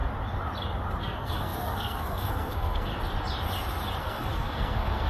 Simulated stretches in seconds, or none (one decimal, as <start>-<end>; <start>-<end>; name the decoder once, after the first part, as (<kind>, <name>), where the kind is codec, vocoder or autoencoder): 1.0-2.9 (codec, SNAC); 4.0-5.1